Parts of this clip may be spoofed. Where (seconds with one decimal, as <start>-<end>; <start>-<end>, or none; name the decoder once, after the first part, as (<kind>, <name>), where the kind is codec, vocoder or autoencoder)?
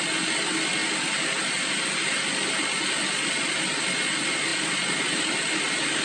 none